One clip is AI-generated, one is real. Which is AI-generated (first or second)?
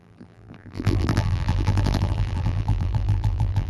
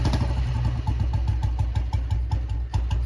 first